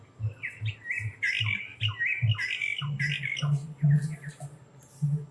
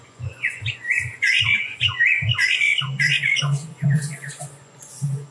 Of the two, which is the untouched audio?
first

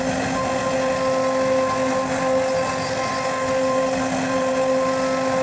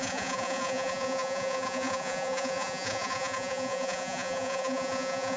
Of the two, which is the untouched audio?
first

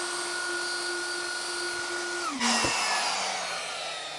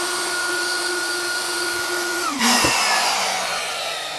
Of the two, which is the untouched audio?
first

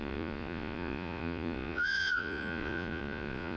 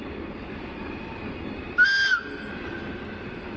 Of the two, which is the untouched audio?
second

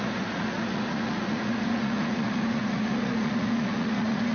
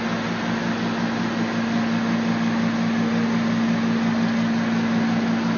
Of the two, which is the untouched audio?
second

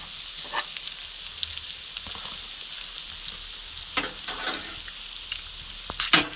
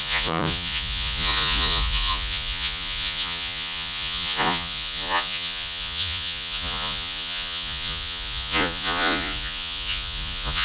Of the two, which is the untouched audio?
first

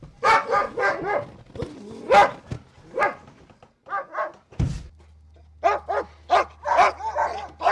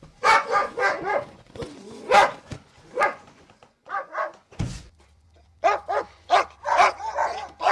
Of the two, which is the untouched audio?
first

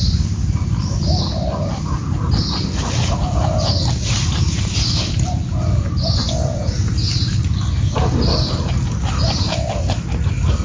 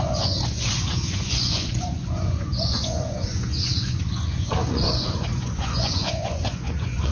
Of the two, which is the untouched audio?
first